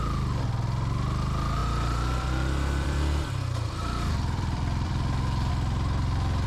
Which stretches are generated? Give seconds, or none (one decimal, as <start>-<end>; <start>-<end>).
1.6-5.5